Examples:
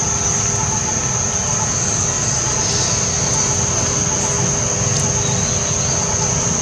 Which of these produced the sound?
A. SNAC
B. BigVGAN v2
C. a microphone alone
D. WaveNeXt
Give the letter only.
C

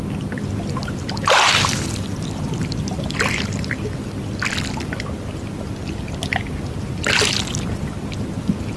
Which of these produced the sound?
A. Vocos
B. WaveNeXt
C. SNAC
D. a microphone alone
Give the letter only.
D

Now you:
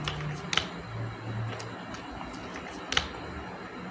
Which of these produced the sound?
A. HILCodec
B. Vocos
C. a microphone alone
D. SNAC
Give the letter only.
C